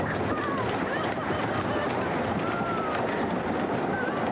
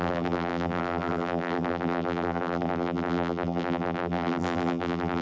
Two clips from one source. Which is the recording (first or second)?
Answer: first